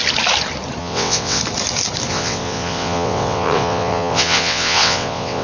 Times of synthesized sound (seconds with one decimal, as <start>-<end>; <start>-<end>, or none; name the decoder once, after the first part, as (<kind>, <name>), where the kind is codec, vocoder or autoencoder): 0.8-1.4 (vocoder, WaveNeXt); 2.1-5.4